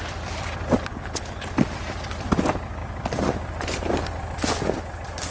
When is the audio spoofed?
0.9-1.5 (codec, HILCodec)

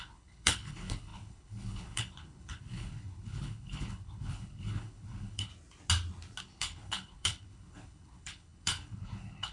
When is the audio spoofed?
0.0-5.5 (codec, HILCodec); 6.4-9.5

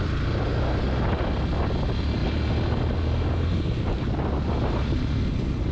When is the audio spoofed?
none

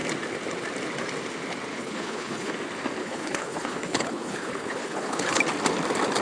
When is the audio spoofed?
1.7-2.5 (codec, HILCodec); 3.0-5.4

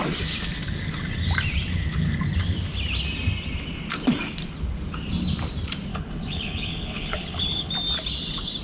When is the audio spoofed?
5.9-7.7 (codec, HILCodec)